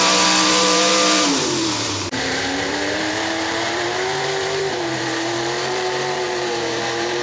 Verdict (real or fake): fake